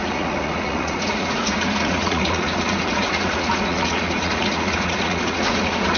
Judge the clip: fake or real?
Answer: fake